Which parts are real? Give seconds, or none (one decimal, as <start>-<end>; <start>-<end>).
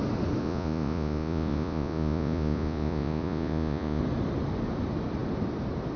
0.0-0.4; 4.0-6.0